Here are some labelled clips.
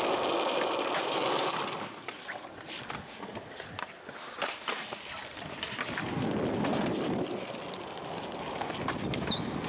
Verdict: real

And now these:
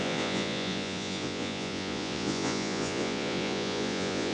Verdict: fake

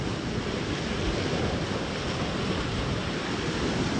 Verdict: real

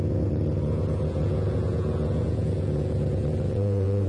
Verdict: fake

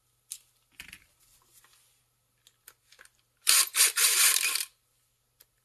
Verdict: real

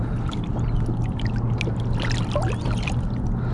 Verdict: real